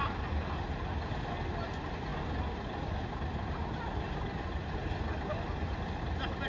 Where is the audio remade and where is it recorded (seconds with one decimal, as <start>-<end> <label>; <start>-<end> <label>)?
0.0-6.5 recorded